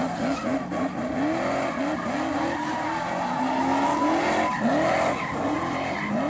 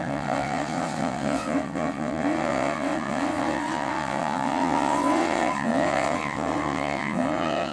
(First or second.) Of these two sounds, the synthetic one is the second